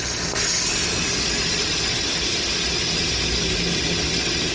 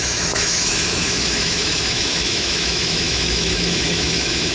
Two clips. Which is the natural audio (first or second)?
first